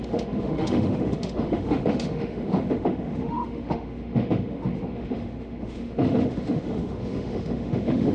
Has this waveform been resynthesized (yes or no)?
yes